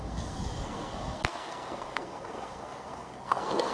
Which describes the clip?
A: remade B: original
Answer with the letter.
A